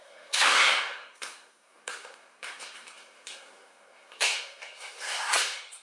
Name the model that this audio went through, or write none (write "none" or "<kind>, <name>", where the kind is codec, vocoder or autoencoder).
codec, SNAC